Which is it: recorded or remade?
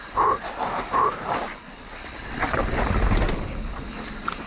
recorded